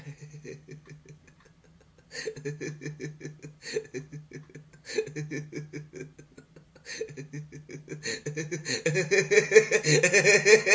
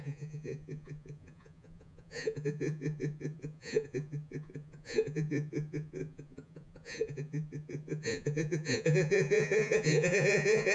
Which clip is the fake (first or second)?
second